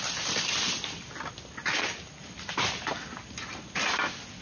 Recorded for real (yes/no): yes